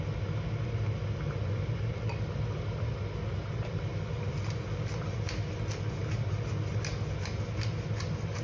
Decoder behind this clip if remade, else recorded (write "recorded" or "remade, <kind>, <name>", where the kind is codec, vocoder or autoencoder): recorded